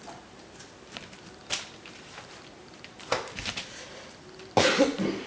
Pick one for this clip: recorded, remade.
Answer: recorded